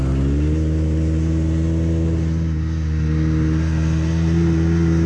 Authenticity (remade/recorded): recorded